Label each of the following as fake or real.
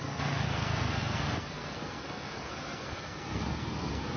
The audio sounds fake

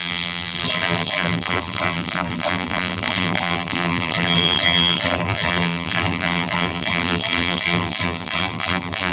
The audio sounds fake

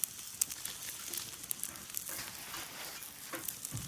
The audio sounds real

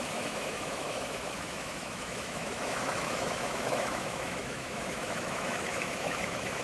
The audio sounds fake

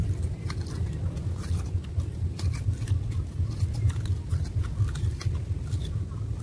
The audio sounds real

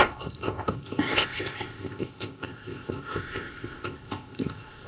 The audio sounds fake